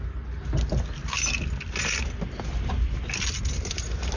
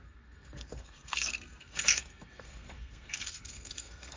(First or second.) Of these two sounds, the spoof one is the second